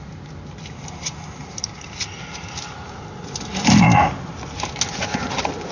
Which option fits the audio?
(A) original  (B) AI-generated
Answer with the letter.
A